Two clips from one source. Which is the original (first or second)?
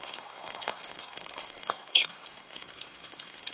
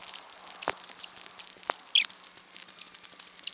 second